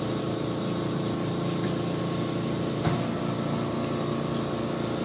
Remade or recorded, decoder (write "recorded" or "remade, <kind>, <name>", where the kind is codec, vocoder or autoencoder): recorded